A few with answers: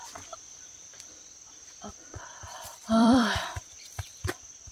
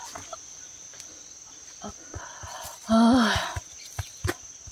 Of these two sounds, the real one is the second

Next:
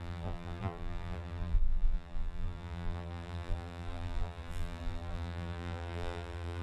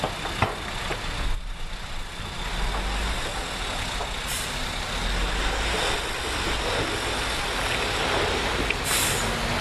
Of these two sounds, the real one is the second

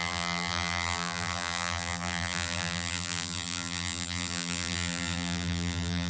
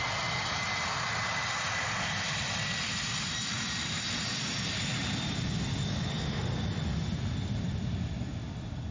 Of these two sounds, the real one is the second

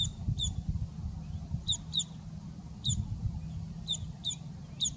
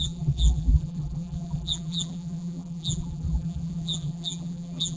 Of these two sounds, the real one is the first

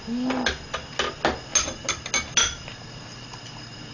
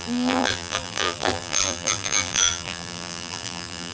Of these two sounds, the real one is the first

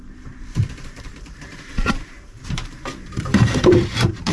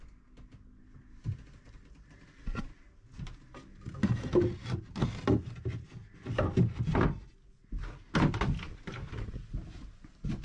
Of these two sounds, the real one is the second